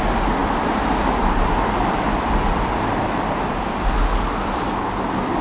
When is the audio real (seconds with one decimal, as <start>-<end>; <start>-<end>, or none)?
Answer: 0.0-0.4; 3.6-5.4